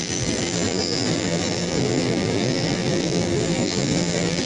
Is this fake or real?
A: fake